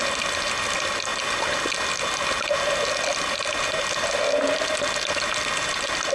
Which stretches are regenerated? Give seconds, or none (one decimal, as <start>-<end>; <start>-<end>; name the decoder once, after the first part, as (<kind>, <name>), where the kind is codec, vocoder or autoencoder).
none